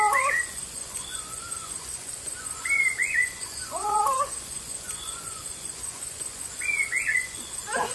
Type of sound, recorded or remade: remade